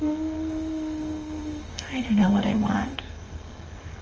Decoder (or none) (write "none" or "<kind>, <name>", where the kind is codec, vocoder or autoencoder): codec, SNAC